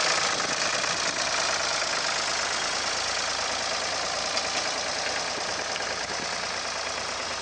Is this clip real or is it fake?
real